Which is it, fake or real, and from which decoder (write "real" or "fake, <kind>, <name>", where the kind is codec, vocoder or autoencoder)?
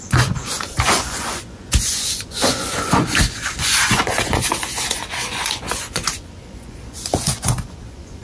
fake, vocoder, Vocos